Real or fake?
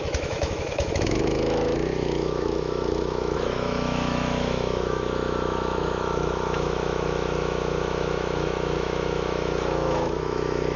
fake